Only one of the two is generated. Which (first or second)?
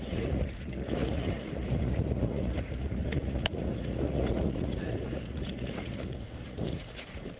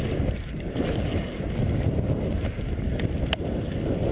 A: first